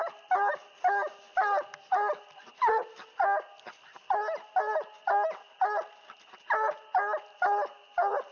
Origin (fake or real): real